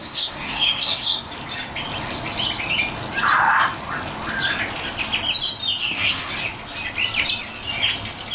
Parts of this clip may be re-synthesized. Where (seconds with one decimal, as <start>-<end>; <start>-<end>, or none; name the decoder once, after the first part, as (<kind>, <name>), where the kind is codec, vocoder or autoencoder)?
0.0-1.3 (codec, SNAC); 5.8-6.3